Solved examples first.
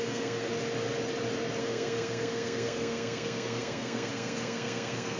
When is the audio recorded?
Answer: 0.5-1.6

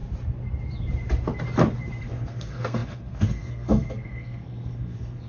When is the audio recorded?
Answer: 0.0-2.0

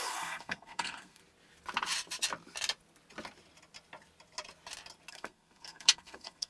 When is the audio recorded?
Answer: 1.2-5.1

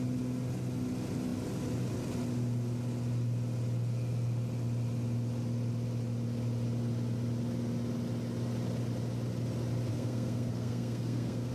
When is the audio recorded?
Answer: 0.0-9.9

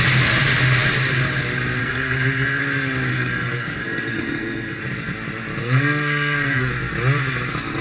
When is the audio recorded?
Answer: 0.0-1.8; 2.6-3.1; 4.8-5.6; 6.7-7.8

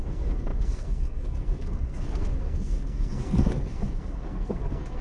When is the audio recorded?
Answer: none

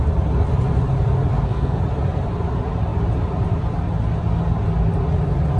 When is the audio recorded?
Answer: 0.0-1.3; 1.8-5.6